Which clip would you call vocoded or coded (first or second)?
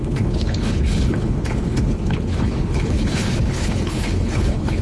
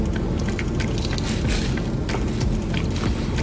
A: first